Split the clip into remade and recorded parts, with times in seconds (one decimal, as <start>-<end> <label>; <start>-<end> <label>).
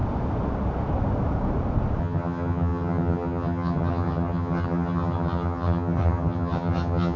0.0-2.0 recorded; 2.0-7.2 remade